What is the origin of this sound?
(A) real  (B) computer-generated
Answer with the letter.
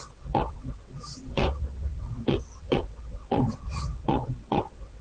B